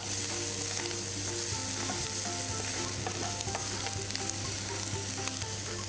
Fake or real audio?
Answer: real